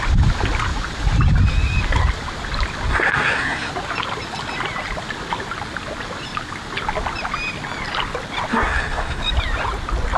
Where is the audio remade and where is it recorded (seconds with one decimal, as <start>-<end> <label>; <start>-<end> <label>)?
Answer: 0.0-2.9 recorded; 2.9-3.7 remade; 3.7-8.5 recorded; 8.5-9.2 remade; 9.2-10.2 recorded